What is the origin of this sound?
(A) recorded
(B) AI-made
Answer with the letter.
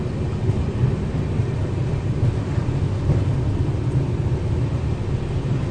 A